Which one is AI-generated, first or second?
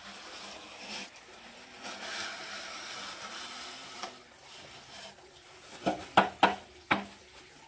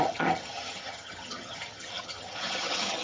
second